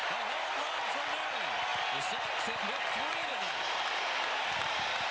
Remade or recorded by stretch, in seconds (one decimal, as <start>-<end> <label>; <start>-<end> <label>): 0.0-0.6 remade; 0.6-3.3 recorded; 3.3-5.1 remade